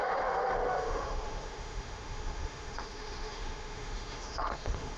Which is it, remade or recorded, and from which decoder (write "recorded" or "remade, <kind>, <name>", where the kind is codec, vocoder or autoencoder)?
remade, autoencoder, DAC-VAE